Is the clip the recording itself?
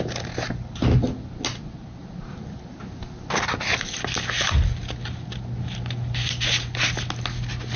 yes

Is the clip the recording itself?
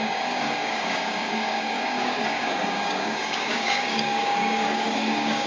no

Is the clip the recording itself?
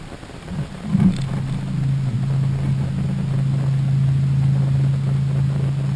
yes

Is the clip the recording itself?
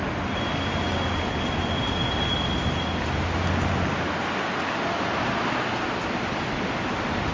yes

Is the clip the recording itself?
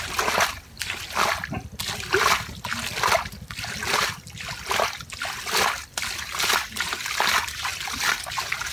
yes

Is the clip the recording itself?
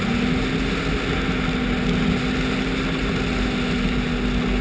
yes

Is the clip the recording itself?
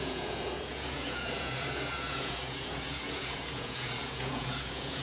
no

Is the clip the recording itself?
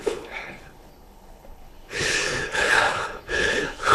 no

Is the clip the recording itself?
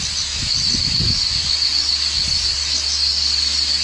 yes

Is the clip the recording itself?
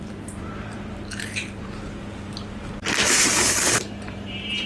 no